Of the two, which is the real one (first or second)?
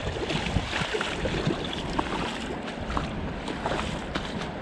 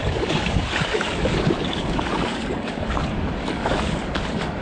first